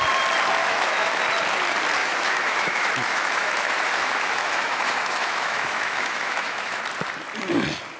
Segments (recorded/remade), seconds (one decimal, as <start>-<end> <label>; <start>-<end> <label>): 0.0-0.6 recorded; 0.6-1.2 remade; 1.2-2.0 recorded; 2.0-6.8 remade; 6.8-8.0 recorded